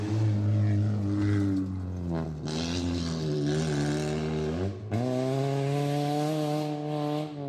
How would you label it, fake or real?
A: real